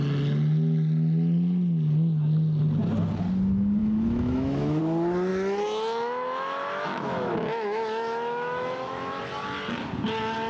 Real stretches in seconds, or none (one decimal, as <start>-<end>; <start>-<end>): 0.0-3.8; 4.8-5.3; 9.2-10.5